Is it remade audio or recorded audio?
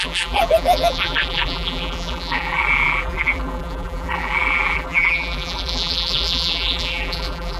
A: remade